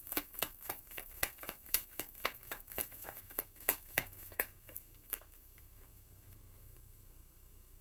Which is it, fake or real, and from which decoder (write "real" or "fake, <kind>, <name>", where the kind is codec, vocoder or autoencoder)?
fake, codec, SNAC